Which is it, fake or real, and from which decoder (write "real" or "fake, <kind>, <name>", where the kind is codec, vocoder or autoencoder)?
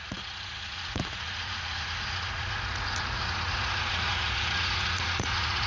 fake, vocoder, Vocos